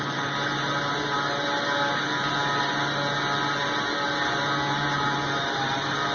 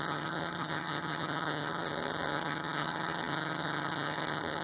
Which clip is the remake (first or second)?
second